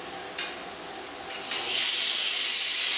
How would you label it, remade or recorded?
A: recorded